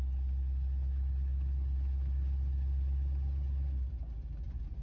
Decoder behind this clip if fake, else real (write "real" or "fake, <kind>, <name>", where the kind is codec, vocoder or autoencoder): real